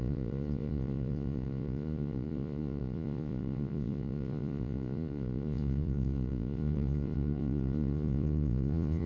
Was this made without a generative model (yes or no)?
no